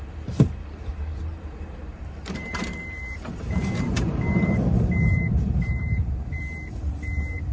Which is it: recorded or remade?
remade